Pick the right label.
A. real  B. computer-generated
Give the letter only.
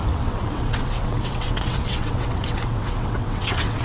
B